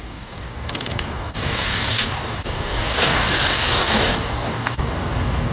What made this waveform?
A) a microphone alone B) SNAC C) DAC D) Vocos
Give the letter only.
C